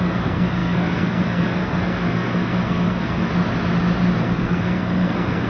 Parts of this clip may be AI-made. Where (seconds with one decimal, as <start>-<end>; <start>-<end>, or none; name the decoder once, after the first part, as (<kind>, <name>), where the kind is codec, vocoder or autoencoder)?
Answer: 0.0-3.3 (codec, SNAC); 4.2-5.5